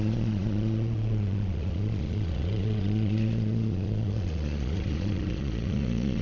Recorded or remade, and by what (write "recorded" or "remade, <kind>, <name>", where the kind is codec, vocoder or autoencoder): remade, vocoder, Vocos